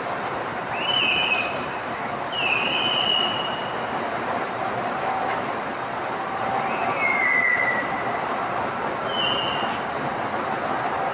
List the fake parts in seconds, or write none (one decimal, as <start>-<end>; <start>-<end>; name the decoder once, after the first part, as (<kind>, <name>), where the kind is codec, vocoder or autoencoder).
none